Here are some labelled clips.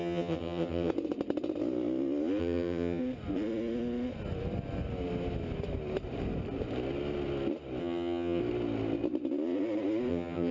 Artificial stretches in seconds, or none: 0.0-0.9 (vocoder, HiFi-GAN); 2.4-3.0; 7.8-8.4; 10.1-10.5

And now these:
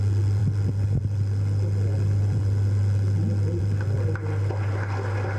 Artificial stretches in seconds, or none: none

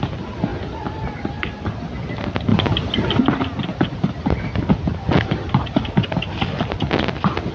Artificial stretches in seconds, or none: 2.5-3.2 (vocoder, BigVGAN v2); 3.7-6.5

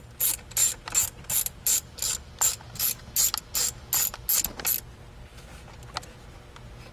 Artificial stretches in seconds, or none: none

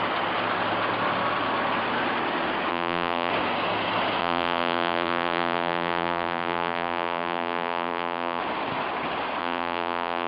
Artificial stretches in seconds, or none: 2.7-3.3 (vocoder, BigVGAN v2); 4.2-8.4; 9.4-10.3

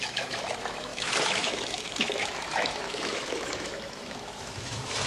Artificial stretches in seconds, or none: 0.0-5.1 (autoencoder, DAC-VAE)

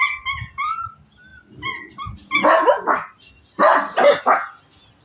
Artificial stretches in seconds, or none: none